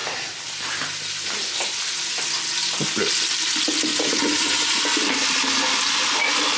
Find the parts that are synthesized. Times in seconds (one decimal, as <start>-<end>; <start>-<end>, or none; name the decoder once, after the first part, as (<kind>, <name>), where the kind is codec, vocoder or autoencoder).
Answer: 3.9-4.8 (vocoder, Vocos)